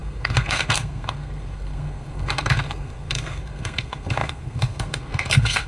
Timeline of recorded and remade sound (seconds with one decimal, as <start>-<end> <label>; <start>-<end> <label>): 0.0-5.7 remade